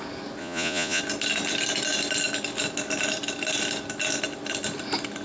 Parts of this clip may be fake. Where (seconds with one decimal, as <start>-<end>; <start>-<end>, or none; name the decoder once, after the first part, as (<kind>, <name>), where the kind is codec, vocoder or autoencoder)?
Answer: 0.4-1.0 (vocoder, Vocos)